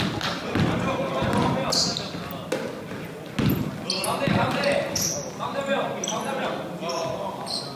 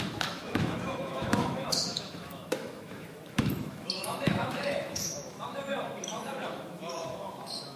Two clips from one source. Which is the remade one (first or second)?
second